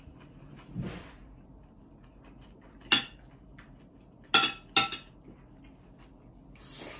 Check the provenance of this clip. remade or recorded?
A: recorded